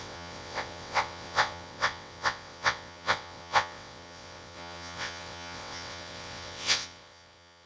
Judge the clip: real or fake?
fake